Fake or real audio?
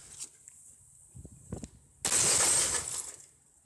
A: real